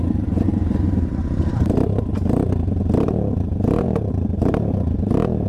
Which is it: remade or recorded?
remade